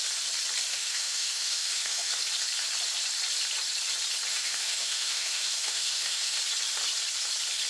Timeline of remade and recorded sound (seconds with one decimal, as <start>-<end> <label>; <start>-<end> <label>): 0.0-0.7 recorded; 0.7-2.1 remade; 2.1-4.3 recorded; 4.3-6.4 remade; 6.4-7.7 recorded